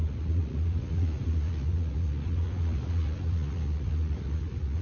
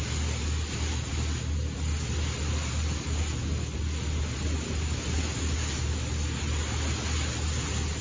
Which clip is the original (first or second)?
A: second